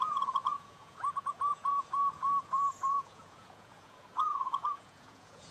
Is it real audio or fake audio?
fake